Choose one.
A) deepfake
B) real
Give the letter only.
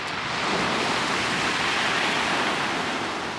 B